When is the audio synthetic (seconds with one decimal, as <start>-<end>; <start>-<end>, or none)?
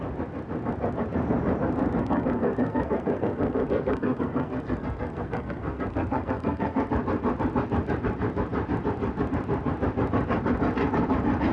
2.0-6.9